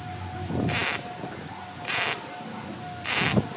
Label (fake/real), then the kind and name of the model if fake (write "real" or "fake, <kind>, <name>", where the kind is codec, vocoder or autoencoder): real